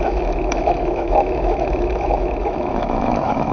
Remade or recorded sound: remade